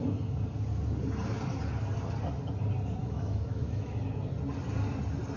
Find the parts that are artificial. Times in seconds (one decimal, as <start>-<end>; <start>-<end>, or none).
3.0-4.0